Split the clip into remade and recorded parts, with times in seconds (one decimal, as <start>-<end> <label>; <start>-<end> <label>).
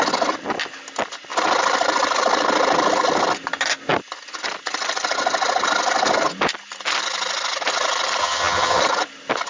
0.0-8.2 recorded; 8.2-8.8 remade; 8.8-9.5 recorded